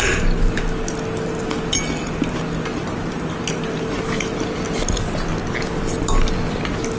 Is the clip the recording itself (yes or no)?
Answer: yes